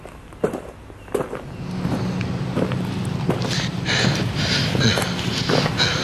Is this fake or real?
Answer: real